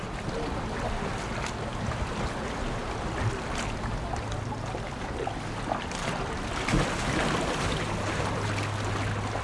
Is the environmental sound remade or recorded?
recorded